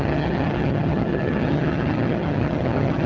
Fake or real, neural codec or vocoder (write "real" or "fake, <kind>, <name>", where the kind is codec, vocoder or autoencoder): fake, vocoder, HiFi-GAN